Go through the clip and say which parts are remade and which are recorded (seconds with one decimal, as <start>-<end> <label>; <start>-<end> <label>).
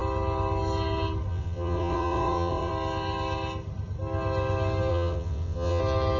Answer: 0.0-1.3 recorded; 1.3-2.7 remade; 2.7-4.9 recorded; 4.9-5.8 remade; 5.8-6.2 recorded